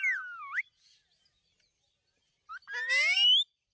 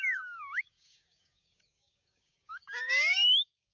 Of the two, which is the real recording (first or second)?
first